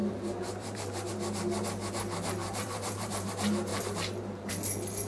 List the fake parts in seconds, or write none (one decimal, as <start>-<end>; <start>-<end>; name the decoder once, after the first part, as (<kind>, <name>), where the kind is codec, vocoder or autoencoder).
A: 0.0-1.1 (vocoder, BigVGAN v2); 2.4-3.3; 3.7-4.5